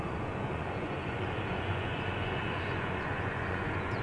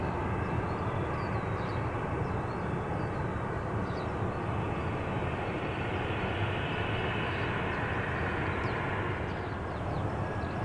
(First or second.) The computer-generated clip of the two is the first